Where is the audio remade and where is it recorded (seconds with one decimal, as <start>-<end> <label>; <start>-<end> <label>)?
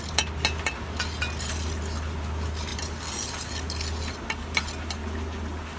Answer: 0.0-5.8 recorded